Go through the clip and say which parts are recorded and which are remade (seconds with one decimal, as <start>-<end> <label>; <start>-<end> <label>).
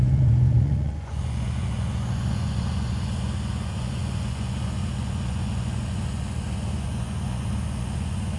0.0-8.4 remade